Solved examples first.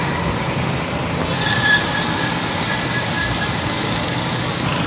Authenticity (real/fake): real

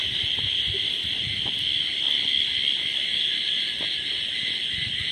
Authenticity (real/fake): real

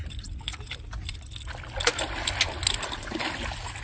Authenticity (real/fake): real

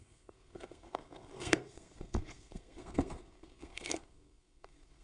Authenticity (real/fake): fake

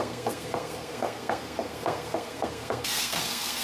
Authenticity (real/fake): fake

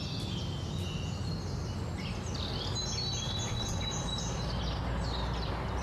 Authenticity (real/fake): real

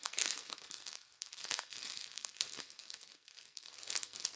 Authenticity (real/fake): fake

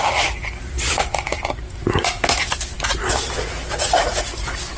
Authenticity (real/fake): real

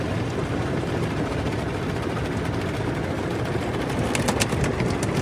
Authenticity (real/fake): real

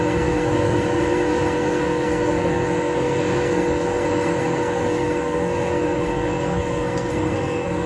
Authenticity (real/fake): fake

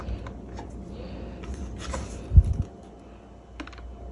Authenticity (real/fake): real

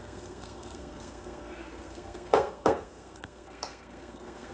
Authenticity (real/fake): fake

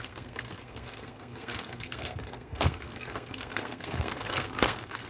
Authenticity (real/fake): fake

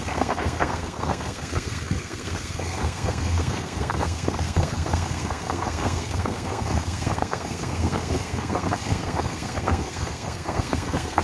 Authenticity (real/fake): fake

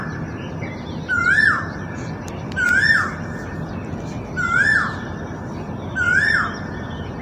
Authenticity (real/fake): real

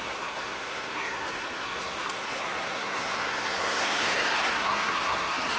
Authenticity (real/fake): fake